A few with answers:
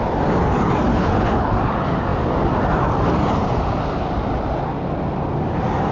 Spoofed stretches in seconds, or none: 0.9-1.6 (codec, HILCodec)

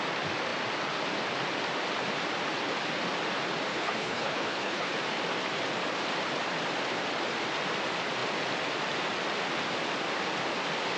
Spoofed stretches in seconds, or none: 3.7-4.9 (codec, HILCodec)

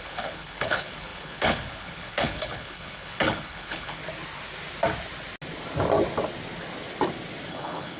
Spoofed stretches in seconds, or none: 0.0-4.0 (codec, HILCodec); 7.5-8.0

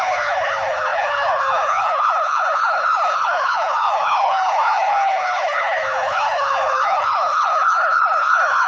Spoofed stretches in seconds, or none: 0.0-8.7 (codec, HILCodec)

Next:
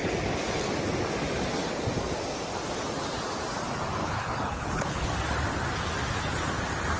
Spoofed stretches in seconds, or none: 4.0-5.1 (codec, HILCodec)

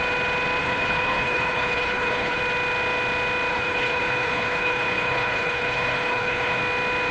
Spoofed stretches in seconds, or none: 0.6-2.4 (codec, HILCodec); 3.5-6.6